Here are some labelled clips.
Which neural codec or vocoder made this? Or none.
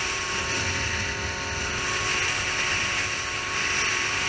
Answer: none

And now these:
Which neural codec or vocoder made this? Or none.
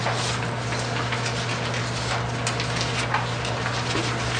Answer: none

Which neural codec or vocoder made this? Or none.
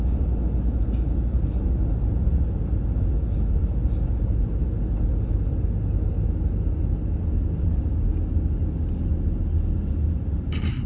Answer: none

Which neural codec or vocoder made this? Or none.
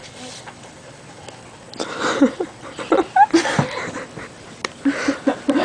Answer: none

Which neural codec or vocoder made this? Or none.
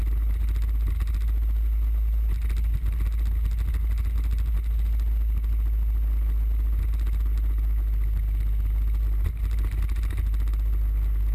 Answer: none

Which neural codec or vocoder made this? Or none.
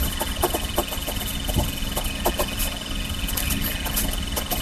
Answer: none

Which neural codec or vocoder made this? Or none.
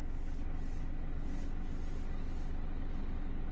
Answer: none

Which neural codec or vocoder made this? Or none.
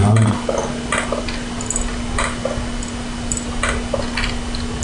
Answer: none